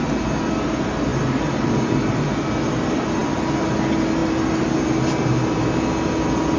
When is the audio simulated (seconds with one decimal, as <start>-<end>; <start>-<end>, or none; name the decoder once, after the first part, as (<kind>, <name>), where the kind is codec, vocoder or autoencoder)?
none